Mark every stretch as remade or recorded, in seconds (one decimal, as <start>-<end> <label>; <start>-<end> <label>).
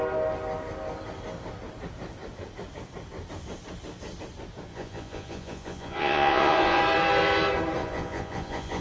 0.0-4.7 recorded; 4.7-6.8 remade; 6.8-7.8 recorded; 7.8-8.8 remade